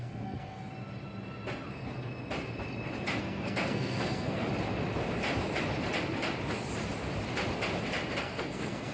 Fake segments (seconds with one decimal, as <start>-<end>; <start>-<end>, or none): 0.0-0.6; 3.2-4.5; 8.2-8.9